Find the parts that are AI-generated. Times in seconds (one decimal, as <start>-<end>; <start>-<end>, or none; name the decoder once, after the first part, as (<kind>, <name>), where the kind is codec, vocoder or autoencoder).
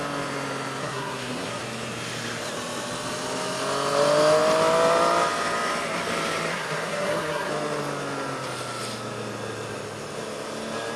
0.8-1.6 (codec, SNAC); 6.5-7.5